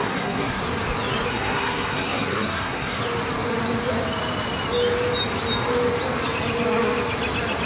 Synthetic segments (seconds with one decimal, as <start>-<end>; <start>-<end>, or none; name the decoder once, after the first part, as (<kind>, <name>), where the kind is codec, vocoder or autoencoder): 0.0-0.6 (codec, SNAC); 1.3-3.0

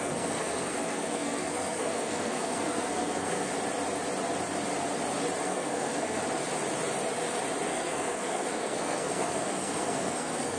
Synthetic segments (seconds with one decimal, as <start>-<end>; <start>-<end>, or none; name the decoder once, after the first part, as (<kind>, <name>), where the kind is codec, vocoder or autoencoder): 0.0-3.5 (codec, SNAC); 5.4-6.2; 7.7-10.6

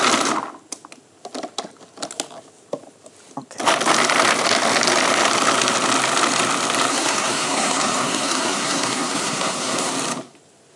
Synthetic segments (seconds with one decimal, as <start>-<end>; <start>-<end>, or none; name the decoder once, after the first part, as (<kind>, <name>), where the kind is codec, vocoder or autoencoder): 6.9-9.9 (codec, SNAC)

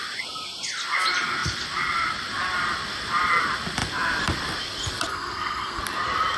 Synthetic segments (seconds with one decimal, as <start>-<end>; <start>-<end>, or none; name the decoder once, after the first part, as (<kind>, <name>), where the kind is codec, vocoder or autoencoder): 5.1-5.8 (codec, SNAC)